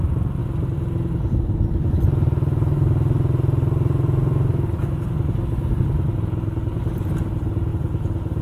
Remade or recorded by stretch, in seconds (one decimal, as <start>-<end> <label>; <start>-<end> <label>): 0.0-8.4 recorded